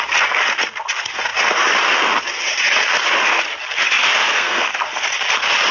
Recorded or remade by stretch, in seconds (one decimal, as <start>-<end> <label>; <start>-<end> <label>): 0.0-4.2 recorded; 4.2-4.9 remade; 4.9-5.7 recorded